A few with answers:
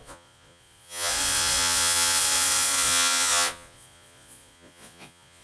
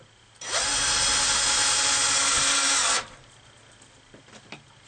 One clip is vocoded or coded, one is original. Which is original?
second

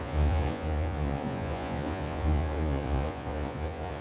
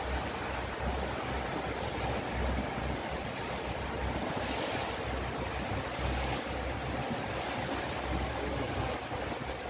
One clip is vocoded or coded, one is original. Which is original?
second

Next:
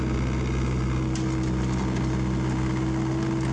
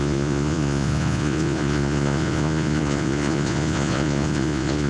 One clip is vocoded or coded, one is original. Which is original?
first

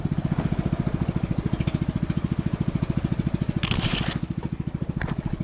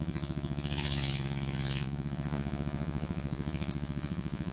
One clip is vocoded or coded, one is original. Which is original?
first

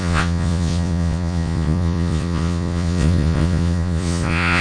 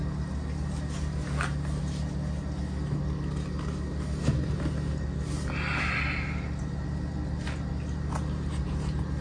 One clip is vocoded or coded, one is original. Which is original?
second